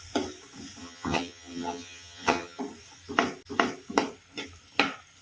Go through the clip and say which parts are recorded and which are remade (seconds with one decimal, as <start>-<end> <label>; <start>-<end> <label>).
0.0-0.8 recorded; 0.8-2.6 remade; 2.6-5.2 recorded